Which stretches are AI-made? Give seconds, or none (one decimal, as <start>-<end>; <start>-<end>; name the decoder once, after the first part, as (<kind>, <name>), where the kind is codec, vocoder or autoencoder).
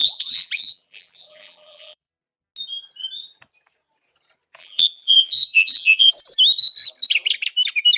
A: 0.0-2.1 (vocoder, BigVGAN v2); 4.6-6.1